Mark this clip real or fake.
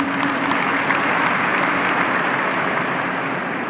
real